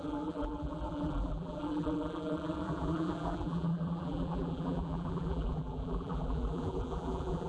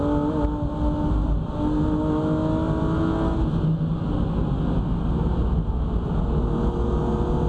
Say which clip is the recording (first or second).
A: second